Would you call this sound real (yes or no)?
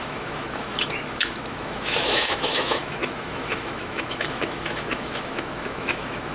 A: no